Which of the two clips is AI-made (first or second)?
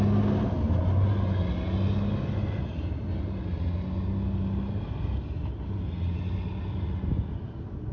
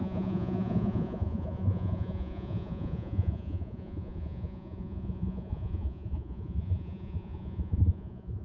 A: second